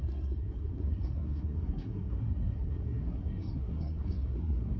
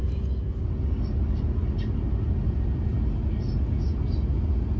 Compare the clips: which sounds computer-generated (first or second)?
first